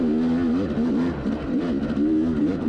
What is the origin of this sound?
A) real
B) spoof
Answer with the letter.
A